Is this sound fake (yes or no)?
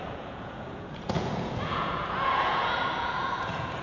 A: yes